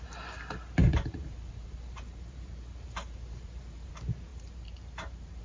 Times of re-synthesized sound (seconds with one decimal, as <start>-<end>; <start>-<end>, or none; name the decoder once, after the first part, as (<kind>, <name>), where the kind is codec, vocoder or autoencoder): 0.8-3.9 (vocoder, BigVGAN v2); 4.3-5.4